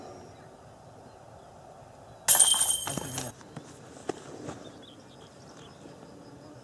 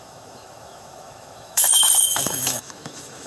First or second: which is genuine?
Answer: first